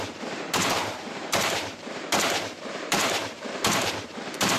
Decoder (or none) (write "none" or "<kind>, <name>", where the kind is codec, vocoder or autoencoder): vocoder, BigVGAN v2